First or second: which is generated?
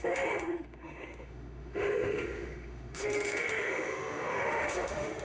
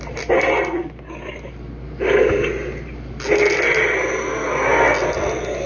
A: first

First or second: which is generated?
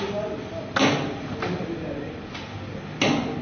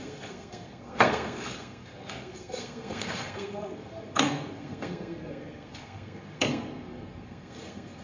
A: second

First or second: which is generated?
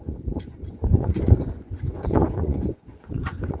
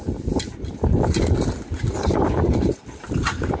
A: first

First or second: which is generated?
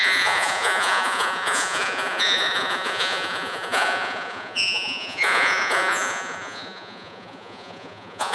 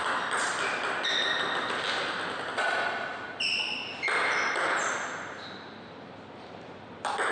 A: first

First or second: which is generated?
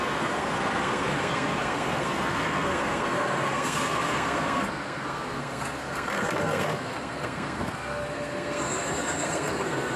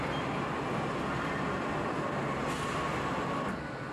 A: first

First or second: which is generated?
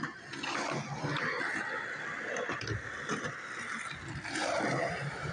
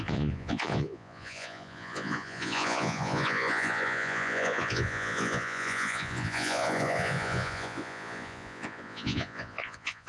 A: second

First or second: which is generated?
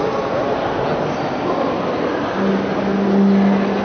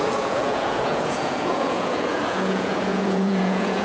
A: second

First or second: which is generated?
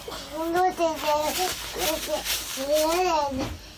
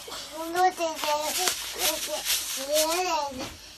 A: second